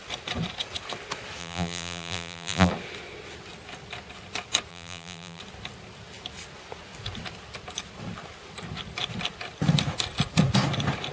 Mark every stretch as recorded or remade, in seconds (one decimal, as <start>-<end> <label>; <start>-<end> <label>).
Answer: 0.0-1.4 recorded; 1.4-2.7 remade; 2.7-4.7 recorded; 4.7-5.4 remade; 5.4-11.1 recorded